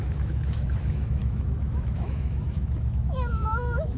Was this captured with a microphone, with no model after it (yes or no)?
no